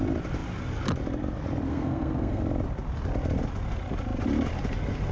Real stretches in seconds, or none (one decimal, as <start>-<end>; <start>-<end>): 0.0-1.7; 2.4-5.1